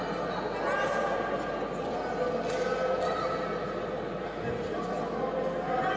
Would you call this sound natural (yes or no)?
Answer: yes